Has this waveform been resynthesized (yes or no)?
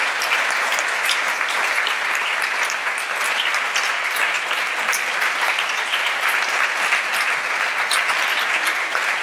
no